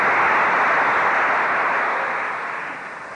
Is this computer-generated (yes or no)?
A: no